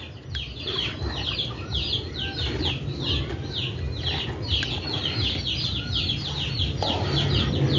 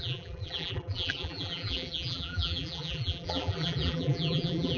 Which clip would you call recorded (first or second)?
first